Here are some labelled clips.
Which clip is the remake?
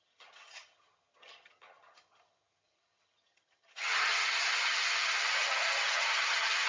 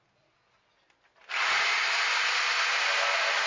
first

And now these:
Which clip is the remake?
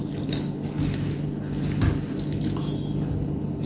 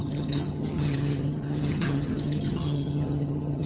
second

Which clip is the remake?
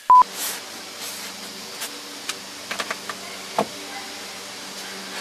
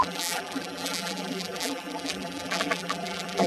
second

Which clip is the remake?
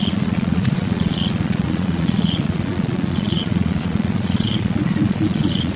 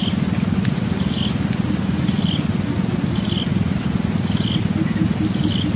first